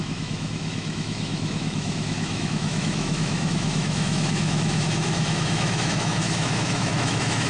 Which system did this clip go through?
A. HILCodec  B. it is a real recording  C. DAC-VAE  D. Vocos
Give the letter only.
C